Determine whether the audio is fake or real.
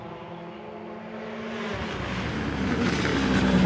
real